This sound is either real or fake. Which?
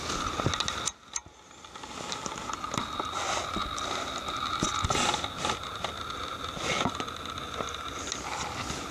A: real